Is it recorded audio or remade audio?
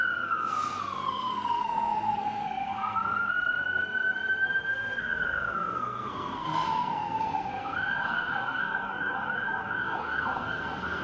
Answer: remade